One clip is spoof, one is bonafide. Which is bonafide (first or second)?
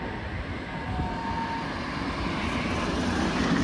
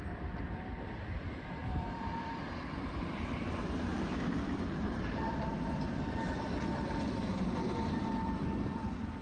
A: first